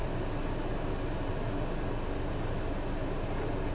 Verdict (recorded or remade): recorded